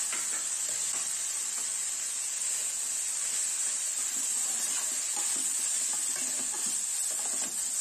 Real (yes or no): yes